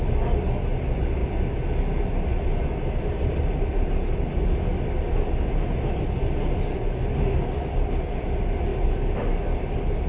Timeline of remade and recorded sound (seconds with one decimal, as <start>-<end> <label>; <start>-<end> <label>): 0.0-10.1 recorded